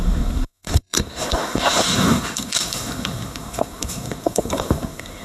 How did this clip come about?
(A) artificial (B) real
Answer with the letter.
A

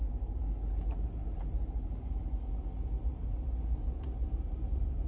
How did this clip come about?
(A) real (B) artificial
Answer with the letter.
A